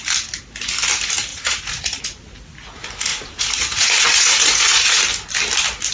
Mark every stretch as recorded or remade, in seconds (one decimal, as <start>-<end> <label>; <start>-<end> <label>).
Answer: 0.0-1.3 recorded; 1.3-2.0 remade; 2.0-3.1 recorded; 3.1-5.0 remade; 5.0-5.9 recorded